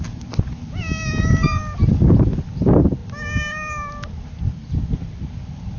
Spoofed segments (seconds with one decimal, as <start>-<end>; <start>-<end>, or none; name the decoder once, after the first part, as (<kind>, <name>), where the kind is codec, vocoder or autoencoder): none